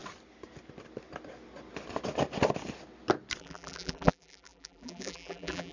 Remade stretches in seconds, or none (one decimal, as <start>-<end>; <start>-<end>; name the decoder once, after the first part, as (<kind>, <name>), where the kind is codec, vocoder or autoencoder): 3.4-5.7 (vocoder, BigVGAN v2)